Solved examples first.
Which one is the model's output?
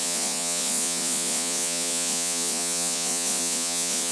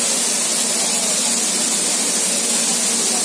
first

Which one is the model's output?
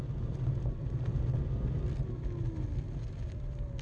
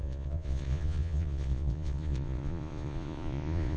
second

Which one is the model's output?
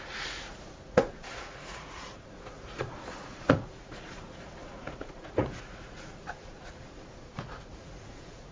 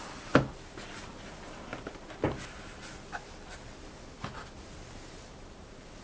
first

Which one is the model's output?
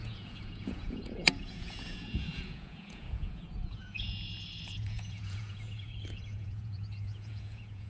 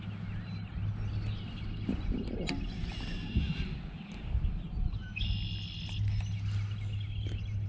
first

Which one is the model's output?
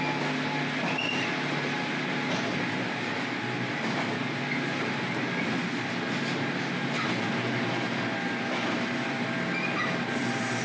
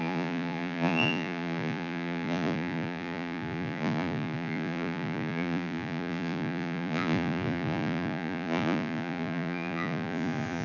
second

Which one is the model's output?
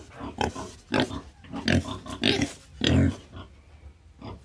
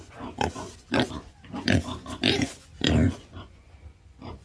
second